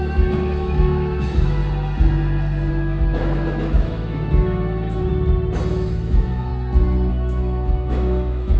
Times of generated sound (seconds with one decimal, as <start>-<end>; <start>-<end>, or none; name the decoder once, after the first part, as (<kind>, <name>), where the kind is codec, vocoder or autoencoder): 0.0-1.6 (autoencoder, DAC-VAE); 2.7-5.1; 5.7-6.5; 7.1-8.6